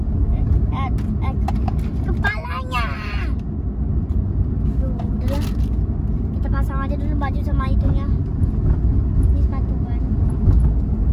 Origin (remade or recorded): recorded